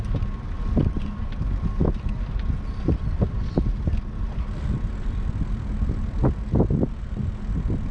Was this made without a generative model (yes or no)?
yes